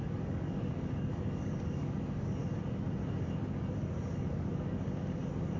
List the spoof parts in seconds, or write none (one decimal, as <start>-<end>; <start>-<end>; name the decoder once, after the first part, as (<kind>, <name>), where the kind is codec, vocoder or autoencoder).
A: 0.0-2.4 (codec, DAC); 3.5-5.6